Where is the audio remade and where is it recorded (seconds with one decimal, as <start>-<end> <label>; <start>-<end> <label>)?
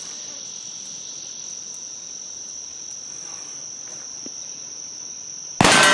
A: 0.0-4.1 recorded; 4.1-5.1 remade; 5.1-5.9 recorded